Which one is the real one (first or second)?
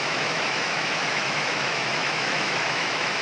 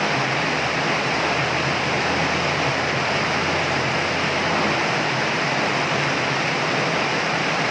second